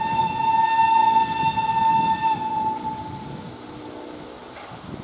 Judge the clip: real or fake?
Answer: real